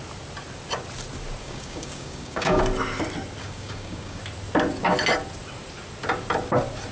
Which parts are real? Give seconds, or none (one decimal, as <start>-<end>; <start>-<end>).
0.0-1.4; 2.6-3.4; 4.2-6.9